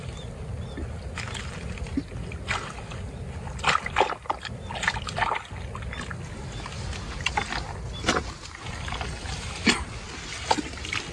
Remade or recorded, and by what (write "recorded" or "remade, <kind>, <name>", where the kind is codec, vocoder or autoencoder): recorded